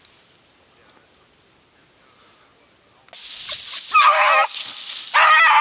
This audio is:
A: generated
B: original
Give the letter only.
B